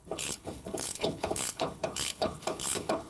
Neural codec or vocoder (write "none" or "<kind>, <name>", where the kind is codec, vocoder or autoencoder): codec, HILCodec